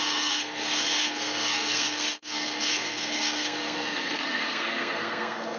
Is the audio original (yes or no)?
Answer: no